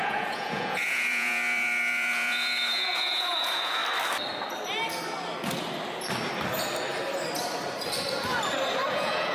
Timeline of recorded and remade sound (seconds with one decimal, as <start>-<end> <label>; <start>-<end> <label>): 0.0-3.8 remade; 3.8-8.9 recorded; 8.9-9.3 remade